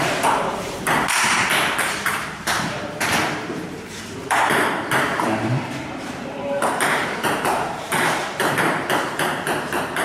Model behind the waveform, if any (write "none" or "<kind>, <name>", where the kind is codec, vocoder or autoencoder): vocoder, BigVGAN v2